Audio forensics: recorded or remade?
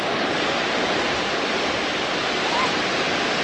recorded